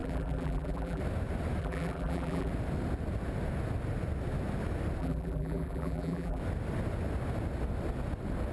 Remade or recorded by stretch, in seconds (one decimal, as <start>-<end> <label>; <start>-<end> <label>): 0.0-1.0 remade; 1.0-1.6 recorded; 1.6-2.5 remade; 2.5-5.0 recorded; 5.0-6.4 remade; 6.4-8.5 recorded